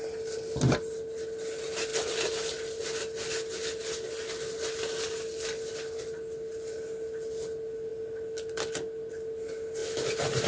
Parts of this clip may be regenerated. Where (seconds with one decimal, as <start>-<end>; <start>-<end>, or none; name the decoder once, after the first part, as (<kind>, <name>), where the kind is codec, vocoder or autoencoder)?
none